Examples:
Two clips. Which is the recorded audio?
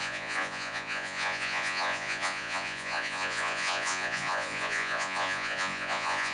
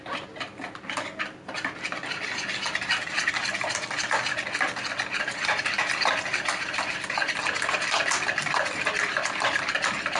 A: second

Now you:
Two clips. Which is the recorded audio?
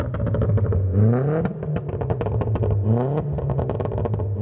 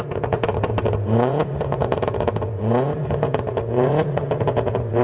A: first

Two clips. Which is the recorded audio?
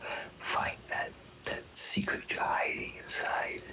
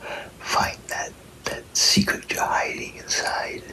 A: second